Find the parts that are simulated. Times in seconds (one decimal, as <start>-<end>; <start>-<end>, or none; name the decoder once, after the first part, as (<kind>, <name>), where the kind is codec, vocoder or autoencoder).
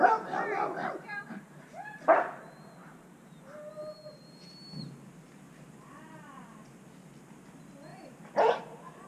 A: 1.1-2.4 (vocoder, BigVGAN v2); 2.8-3.7; 7.9-8.6